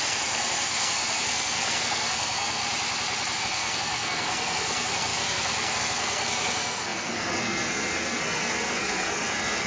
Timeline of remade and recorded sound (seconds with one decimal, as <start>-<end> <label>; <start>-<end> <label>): 0.0-2.6 remade; 2.6-3.4 recorded; 3.4-9.7 remade